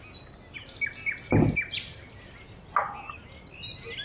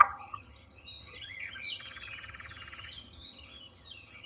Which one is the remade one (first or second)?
second